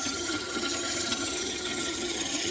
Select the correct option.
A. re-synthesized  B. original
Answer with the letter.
A